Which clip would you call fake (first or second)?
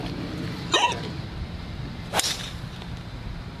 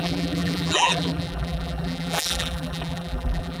second